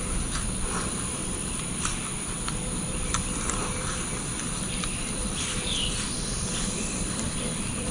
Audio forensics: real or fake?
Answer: fake